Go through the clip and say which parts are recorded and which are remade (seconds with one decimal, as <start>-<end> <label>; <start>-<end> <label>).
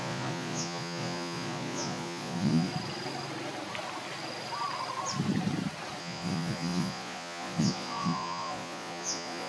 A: 0.0-2.7 remade; 2.7-6.0 recorded; 6.0-9.5 remade